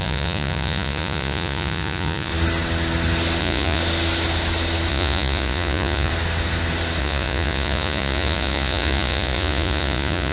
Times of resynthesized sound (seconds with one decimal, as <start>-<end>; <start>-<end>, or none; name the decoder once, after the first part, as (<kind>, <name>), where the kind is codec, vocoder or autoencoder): 0.0-2.3 (vocoder, Vocos); 3.4-3.8; 4.9-6.1; 7.0-10.3

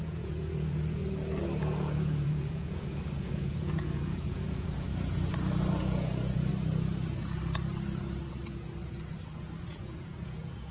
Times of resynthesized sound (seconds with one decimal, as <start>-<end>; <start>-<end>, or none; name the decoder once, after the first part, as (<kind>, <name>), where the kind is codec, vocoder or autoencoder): 0.0-1.0 (vocoder, Vocos); 1.6-4.9; 5.7-6.5; 9.6-10.7

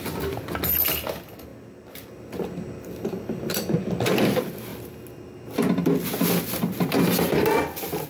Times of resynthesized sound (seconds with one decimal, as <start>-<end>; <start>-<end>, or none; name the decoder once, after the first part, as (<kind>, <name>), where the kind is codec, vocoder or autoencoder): none